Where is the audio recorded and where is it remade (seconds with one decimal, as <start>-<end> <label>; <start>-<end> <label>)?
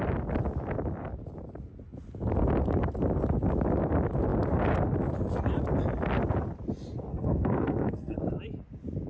0.0-7.1 recorded; 7.1-8.4 remade; 8.4-9.1 recorded